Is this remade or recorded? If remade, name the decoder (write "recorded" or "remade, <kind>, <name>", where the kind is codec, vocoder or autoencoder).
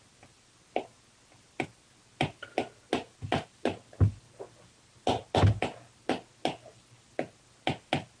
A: recorded